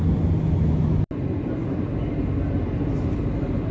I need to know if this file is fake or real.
real